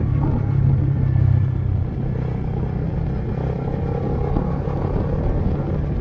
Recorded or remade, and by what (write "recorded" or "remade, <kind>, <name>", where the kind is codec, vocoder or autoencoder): recorded